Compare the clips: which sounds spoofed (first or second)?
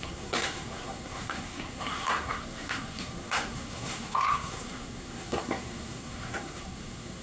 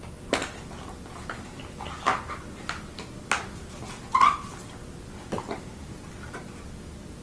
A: first